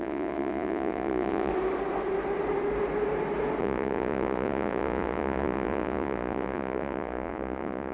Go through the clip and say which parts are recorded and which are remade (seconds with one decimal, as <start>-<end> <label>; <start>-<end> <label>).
0.0-1.5 remade; 1.5-3.6 recorded; 3.6-7.9 remade